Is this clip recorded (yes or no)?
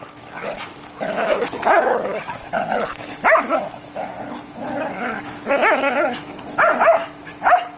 no